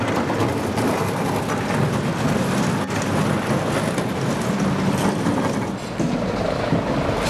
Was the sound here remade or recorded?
recorded